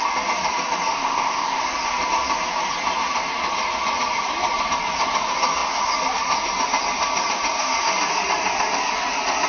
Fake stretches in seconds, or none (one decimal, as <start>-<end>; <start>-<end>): 0.9-1.6